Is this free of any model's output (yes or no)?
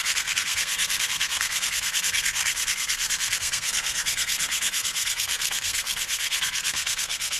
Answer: no